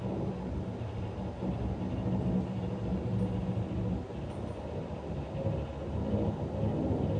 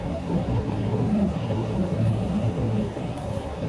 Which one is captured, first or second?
first